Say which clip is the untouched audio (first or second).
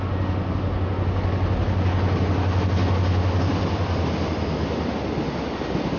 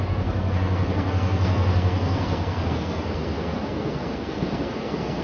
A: first